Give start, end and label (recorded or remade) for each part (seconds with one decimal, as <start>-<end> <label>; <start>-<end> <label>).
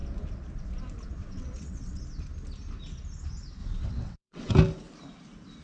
0.0-1.2 recorded; 1.2-2.0 remade; 2.0-3.6 recorded; 3.6-4.5 remade; 4.5-5.6 recorded